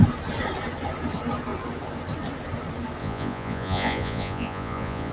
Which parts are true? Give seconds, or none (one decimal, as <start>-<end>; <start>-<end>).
0.0-3.0